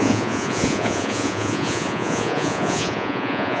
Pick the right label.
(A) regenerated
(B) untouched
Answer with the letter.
A